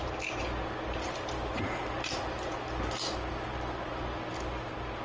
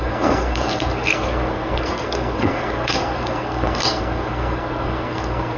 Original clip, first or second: first